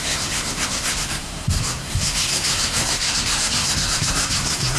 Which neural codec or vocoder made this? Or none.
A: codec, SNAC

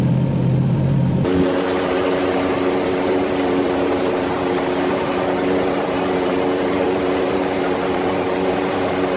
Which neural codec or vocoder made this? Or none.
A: vocoder, BigVGAN v2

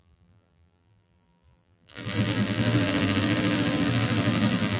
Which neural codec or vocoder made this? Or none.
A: vocoder, BigVGAN v2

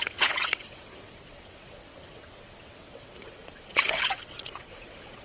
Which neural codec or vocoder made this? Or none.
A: vocoder, WaveNeXt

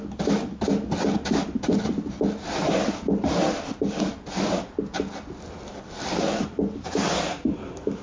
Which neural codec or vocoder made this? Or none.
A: none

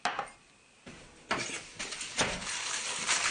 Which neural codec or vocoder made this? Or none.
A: none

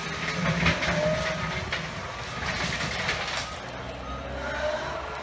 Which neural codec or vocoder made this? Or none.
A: none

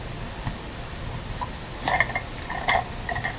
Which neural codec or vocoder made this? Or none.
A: none